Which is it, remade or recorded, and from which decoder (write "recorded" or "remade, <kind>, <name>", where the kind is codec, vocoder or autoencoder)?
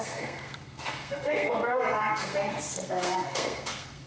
remade, codec, SNAC